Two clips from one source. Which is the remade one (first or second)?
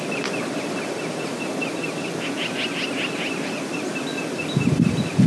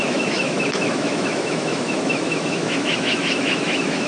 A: second